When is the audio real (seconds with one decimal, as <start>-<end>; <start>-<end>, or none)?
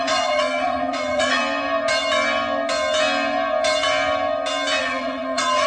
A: 1.4-4.8